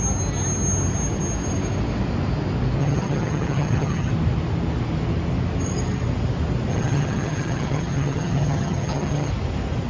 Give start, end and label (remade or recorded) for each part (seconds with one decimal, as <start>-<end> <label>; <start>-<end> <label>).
0.0-2.8 recorded; 2.8-4.1 remade; 4.1-6.7 recorded; 6.7-9.3 remade; 9.3-9.9 recorded